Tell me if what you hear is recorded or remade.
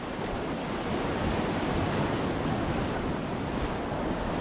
recorded